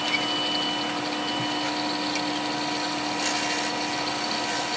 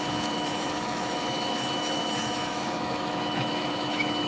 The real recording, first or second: first